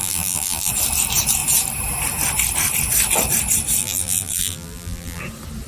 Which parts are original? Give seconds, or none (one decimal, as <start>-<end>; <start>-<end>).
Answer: 0.7-3.8; 5.2-5.7